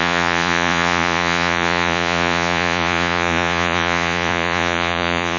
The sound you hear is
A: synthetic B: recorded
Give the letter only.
A